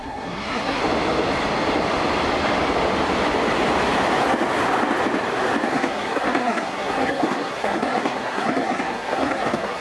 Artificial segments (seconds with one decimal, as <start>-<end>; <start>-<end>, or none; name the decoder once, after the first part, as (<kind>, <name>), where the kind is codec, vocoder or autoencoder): 0.0-0.8 (codec, SNAC); 5.7-9.8